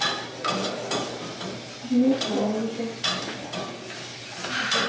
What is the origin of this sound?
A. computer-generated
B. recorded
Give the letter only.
B